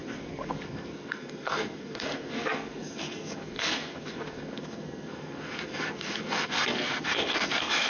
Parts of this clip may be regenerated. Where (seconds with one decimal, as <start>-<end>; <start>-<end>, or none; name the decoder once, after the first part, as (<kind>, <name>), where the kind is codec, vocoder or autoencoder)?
0.0-7.9 (codec, SNAC)

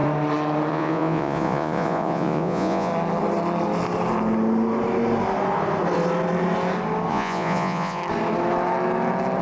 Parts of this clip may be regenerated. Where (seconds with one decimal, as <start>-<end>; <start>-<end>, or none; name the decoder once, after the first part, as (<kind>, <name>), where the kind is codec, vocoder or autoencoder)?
0.7-2.9 (vocoder, Vocos); 7.1-8.0